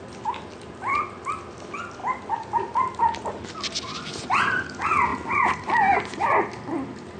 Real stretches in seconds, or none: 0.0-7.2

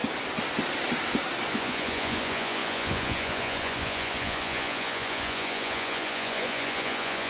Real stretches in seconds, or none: 0.0-1.5

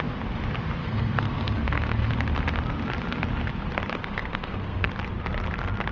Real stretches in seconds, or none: 0.0-0.8; 2.1-4.0; 4.9-5.9

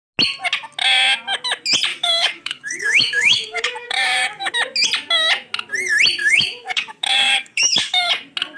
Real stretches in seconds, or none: 0.0-1.9; 4.5-6.2; 8.1-8.6

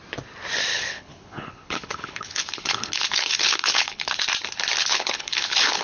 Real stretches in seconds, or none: 0.0-0.7; 4.2-4.8